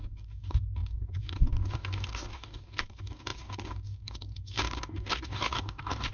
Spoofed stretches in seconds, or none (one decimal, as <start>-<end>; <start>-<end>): 0.0-6.1